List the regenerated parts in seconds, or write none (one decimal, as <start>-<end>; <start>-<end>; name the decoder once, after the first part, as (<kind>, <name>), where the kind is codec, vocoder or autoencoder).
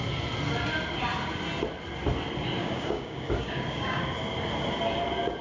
2.6-4.0 (codec, DAC)